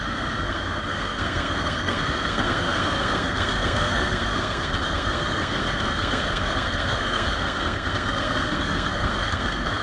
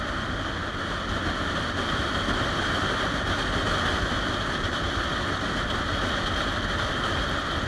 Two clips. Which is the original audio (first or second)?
second